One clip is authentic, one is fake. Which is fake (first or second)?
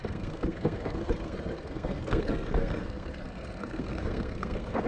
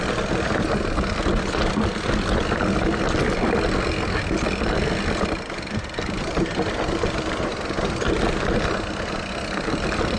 first